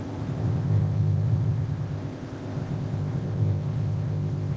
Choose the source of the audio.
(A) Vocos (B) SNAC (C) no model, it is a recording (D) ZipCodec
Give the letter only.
D